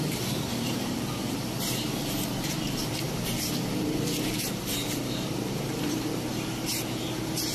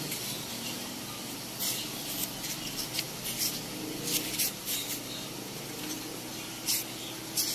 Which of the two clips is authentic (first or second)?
second